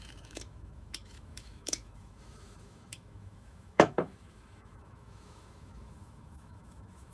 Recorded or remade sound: remade